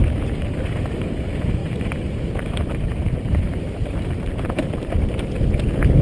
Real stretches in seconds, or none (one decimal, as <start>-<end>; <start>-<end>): 0.8-1.6; 5.2-6.0